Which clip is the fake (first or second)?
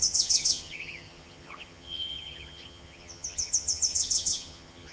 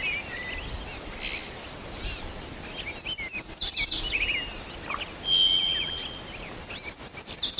first